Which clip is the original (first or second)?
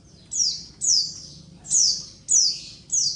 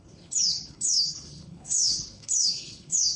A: first